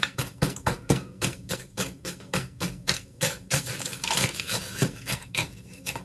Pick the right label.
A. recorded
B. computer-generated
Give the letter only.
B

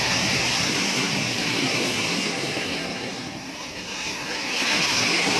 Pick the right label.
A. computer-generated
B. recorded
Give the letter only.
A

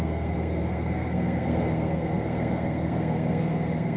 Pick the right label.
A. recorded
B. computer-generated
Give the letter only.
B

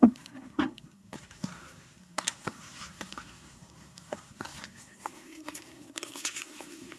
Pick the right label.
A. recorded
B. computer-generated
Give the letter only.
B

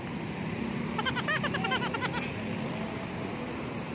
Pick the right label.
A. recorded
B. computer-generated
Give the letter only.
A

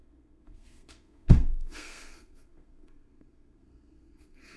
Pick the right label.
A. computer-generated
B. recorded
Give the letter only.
A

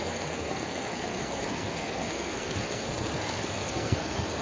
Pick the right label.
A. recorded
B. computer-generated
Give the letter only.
B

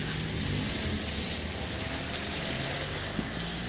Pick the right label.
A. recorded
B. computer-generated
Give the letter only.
A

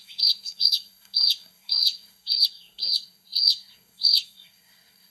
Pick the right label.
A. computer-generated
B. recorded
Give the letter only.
A